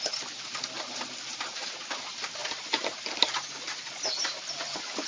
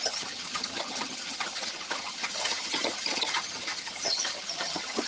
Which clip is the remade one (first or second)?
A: second